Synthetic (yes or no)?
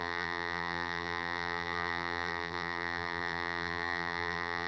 yes